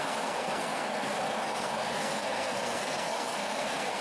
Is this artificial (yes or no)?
yes